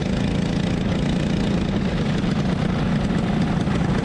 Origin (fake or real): real